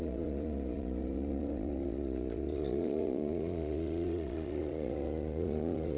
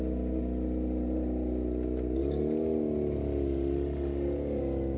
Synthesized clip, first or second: first